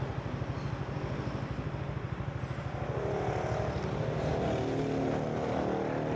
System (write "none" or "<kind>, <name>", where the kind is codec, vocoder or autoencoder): none